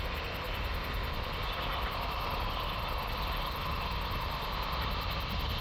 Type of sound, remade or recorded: recorded